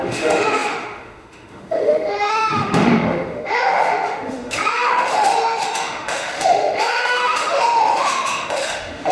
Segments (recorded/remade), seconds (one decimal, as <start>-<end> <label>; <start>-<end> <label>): 0.0-9.1 remade